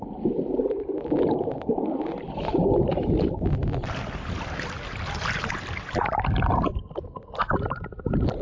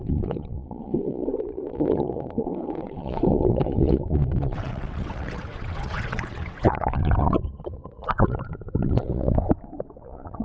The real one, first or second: first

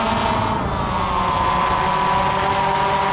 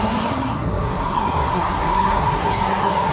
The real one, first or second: first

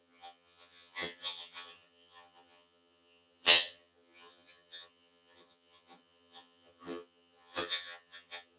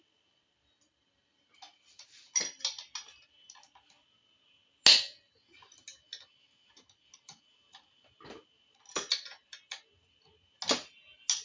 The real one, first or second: second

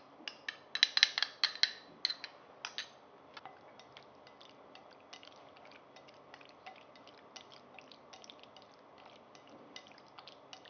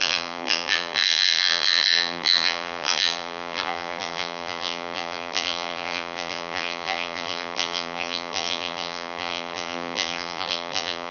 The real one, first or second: first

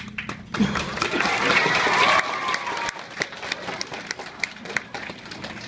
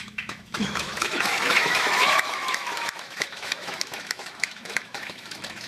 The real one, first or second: first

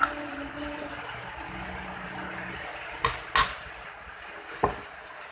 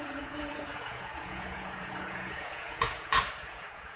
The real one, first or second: first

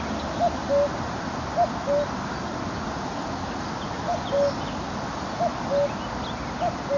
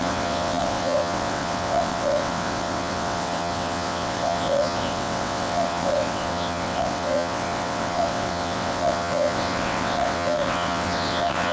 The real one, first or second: first